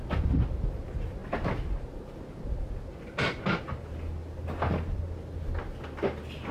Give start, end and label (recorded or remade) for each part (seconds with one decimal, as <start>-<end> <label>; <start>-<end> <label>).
0.0-6.5 recorded